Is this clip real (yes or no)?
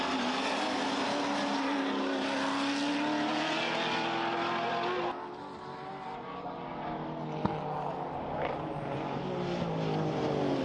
yes